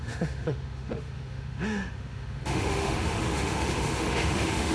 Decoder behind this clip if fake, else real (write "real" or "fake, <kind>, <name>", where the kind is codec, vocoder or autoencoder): fake, autoencoder, DAC-VAE